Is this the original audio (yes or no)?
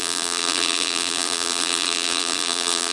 no